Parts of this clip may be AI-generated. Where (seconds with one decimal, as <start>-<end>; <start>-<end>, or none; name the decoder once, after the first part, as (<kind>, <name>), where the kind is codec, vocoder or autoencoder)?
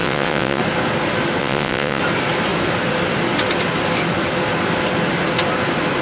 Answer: 0.0-0.6 (vocoder, WaveNeXt); 1.4-2.0